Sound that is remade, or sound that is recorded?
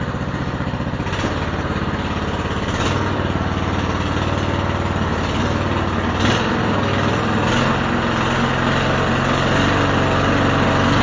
recorded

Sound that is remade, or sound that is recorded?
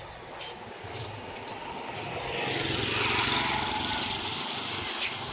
recorded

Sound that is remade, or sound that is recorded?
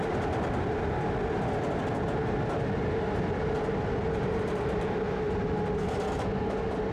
recorded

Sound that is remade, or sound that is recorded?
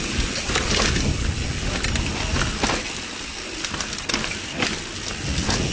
recorded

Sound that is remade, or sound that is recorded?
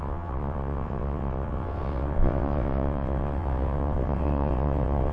remade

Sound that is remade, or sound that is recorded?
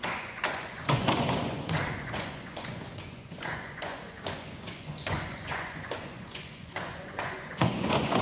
remade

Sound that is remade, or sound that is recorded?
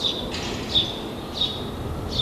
recorded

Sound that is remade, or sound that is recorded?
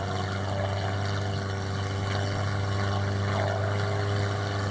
recorded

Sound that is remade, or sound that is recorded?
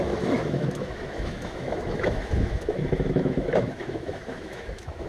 remade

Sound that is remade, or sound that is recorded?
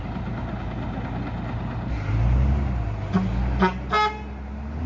recorded